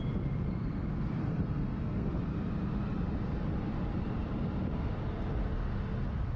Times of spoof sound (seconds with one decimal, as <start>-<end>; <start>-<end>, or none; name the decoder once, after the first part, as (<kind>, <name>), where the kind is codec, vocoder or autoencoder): 1.2-2.1 (codec, SNAC)